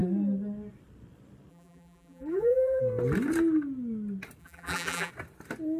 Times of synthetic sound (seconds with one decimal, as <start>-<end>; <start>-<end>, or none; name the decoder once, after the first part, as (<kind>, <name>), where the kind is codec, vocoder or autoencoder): 1.5-2.8 (vocoder, BigVGAN v2); 4.4-5.1